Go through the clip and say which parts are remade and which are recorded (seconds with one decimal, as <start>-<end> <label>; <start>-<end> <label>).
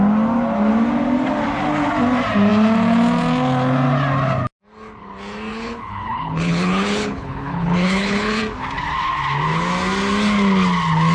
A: 0.0-5.5 recorded; 5.5-8.4 remade; 8.4-11.1 recorded